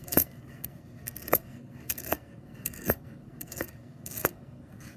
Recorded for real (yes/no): no